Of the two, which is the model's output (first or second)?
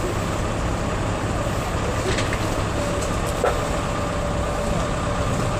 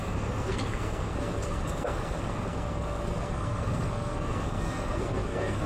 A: second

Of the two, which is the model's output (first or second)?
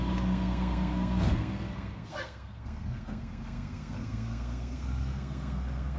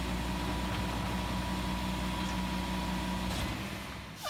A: first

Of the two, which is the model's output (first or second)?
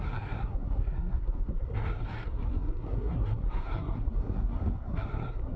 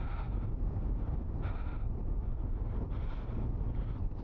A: first